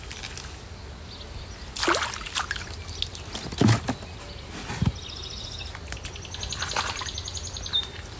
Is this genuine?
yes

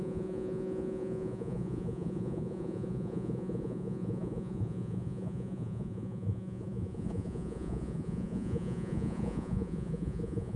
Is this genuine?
no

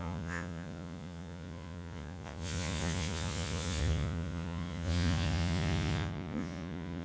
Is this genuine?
no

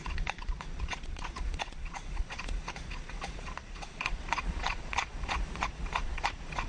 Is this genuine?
no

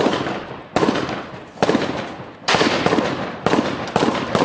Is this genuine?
yes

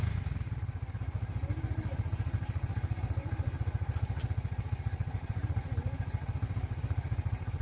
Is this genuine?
yes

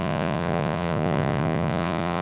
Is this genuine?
no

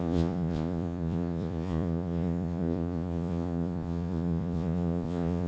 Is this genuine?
no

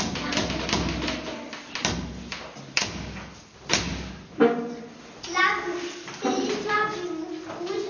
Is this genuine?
yes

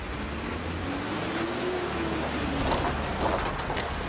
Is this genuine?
yes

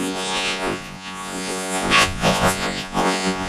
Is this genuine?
no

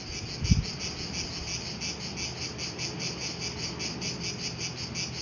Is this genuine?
yes